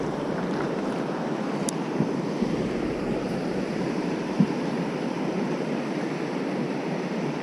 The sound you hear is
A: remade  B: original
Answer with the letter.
A